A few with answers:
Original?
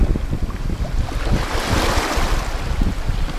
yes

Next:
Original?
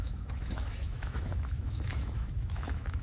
no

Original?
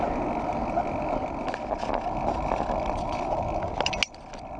yes